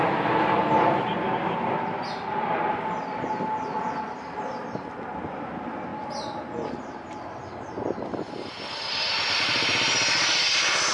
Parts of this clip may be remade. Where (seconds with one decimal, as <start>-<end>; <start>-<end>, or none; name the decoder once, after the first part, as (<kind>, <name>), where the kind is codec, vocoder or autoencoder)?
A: none